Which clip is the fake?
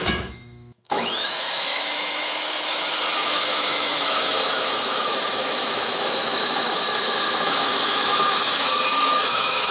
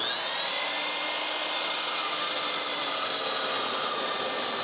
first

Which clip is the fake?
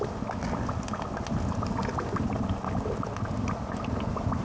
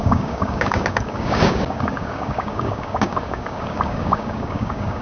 second